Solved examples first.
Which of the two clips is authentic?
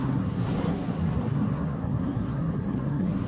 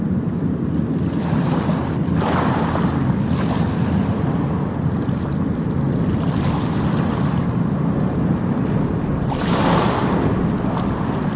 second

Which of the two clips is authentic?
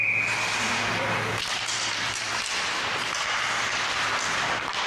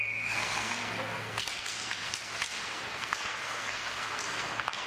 first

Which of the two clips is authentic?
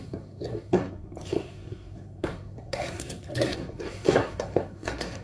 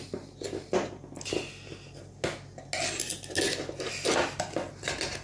second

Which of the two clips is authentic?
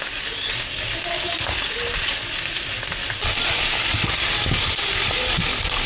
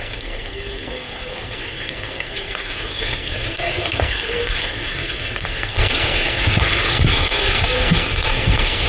first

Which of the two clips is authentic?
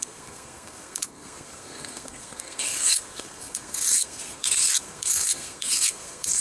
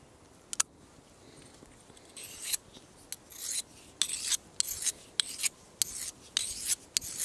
second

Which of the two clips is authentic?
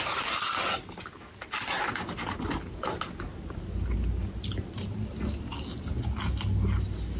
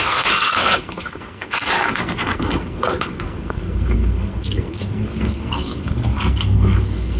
first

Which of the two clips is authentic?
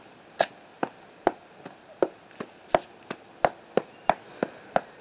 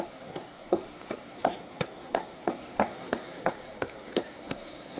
first